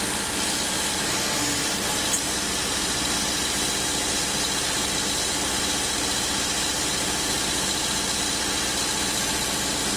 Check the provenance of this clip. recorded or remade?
recorded